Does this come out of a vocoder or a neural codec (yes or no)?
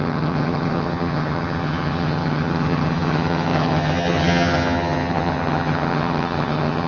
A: yes